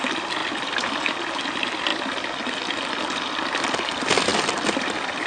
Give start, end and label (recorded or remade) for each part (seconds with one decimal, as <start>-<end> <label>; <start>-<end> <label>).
0.0-5.3 recorded